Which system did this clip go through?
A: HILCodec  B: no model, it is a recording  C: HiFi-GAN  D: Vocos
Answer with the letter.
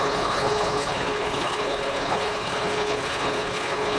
A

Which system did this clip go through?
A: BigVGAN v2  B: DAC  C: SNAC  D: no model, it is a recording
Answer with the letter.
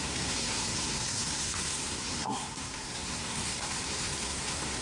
C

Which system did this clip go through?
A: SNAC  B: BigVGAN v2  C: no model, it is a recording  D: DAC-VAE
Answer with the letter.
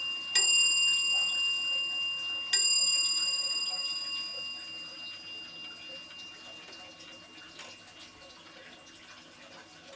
C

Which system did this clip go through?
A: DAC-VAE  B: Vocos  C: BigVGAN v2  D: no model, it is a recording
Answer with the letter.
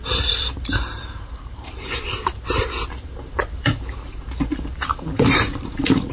C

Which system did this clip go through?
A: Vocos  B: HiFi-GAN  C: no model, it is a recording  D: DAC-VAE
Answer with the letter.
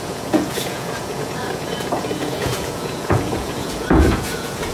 A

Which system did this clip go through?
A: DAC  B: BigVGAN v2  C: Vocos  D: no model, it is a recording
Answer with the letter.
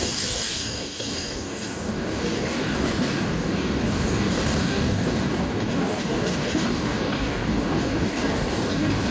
A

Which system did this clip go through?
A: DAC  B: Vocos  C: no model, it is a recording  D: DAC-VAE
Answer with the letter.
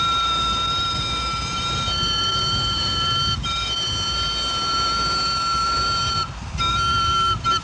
C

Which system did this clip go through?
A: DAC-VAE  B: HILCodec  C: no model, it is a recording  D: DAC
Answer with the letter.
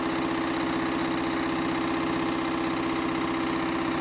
C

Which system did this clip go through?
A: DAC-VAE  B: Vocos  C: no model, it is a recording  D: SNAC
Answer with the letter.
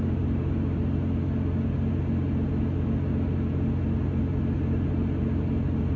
C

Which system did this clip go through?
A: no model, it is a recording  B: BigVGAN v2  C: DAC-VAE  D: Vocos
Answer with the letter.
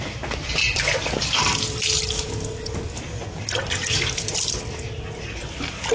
A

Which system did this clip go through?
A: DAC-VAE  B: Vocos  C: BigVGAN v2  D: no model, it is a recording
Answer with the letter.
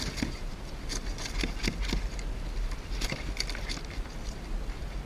D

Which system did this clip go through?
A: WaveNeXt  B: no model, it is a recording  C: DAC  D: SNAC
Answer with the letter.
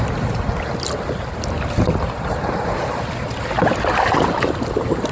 B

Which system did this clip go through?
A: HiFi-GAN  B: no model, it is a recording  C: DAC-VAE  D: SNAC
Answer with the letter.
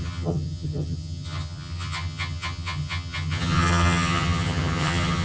A